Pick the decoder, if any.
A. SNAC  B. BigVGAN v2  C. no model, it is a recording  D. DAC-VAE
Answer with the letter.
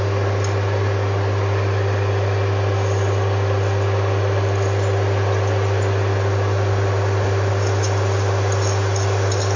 C